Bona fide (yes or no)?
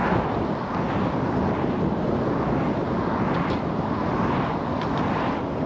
yes